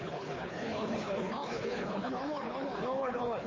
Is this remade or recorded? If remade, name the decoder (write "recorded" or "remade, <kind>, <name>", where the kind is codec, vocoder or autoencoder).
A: remade, codec, HILCodec